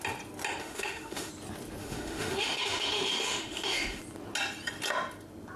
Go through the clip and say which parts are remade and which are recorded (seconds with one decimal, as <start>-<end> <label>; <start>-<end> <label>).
0.0-0.6 recorded; 0.6-1.3 remade; 1.3-1.8 recorded; 1.8-4.0 remade; 4.0-5.6 recorded